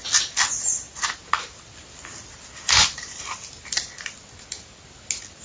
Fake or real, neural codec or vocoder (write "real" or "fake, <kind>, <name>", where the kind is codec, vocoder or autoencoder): real